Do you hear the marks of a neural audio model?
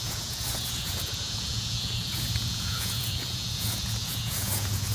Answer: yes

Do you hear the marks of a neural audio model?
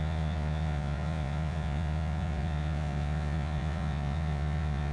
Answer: yes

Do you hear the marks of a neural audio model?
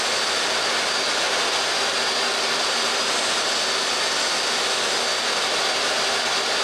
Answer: no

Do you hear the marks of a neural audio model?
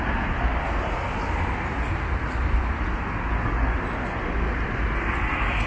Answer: no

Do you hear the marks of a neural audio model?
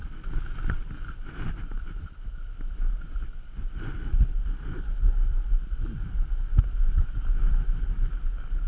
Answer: no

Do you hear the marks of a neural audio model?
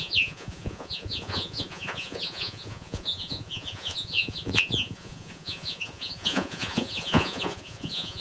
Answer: yes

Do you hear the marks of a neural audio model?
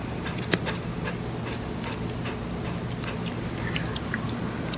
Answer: no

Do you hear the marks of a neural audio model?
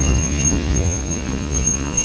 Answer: yes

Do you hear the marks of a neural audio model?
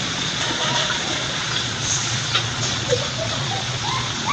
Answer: yes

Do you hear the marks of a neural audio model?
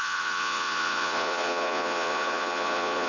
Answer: yes